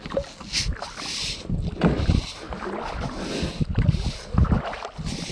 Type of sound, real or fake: real